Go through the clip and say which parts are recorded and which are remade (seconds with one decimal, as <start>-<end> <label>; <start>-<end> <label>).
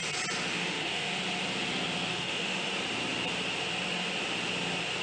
0.0-0.5 recorded; 0.5-1.1 remade; 1.1-2.1 recorded; 2.1-2.7 remade; 2.7-5.0 recorded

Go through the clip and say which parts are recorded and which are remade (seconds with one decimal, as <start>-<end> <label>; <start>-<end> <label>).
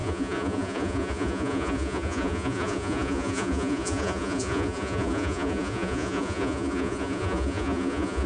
0.0-8.3 remade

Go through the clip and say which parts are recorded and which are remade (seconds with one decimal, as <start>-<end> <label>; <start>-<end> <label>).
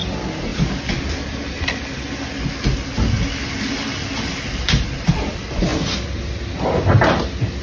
0.0-7.6 recorded